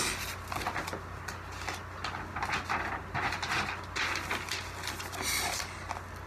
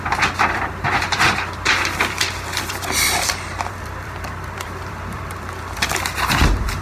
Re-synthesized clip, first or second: second